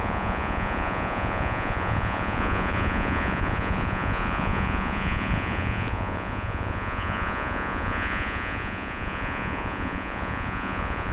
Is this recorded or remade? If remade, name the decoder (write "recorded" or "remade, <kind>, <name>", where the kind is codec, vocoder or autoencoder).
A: remade, vocoder, Vocos